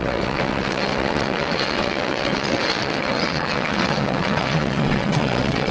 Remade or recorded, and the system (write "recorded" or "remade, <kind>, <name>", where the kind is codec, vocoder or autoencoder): remade, vocoder, WaveNeXt